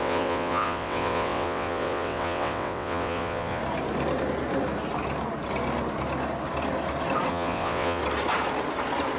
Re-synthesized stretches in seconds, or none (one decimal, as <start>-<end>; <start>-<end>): 0.0-3.6; 7.3-8.0